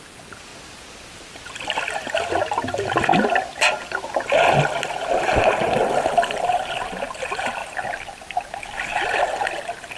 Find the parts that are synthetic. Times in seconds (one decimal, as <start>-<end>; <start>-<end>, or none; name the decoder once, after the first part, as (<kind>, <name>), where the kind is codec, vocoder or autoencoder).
none